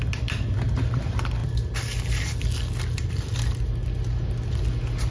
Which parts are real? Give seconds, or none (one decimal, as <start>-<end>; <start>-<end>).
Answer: 0.0-5.1